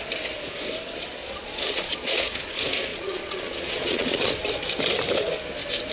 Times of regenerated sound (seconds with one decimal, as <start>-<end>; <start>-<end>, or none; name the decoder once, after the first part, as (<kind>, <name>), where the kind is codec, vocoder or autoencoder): 1.2-2.4 (vocoder, Vocos); 2.9-4.4